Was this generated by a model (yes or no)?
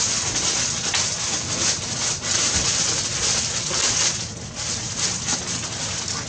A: no